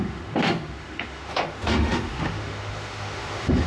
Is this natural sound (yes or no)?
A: no